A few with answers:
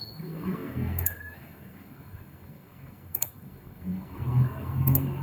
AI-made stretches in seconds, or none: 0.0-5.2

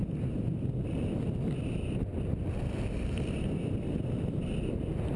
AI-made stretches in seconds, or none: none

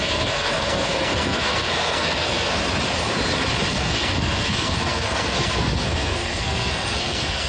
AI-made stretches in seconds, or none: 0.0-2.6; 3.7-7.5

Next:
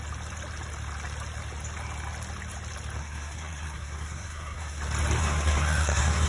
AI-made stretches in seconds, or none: 3.0-4.8; 5.2-6.3

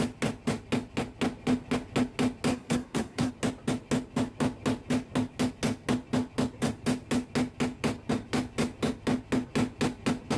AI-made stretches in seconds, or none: 2.5-3.3